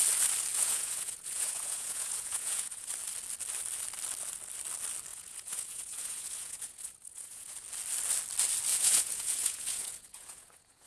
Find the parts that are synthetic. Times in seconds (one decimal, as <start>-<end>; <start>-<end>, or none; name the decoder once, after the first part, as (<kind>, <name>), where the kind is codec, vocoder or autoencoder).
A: 0.5-2.9 (vocoder, Vocos); 5.1-7.6; 8.7-10.9